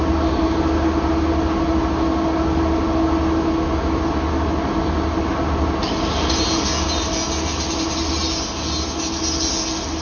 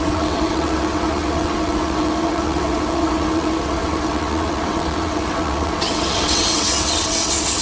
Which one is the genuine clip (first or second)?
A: first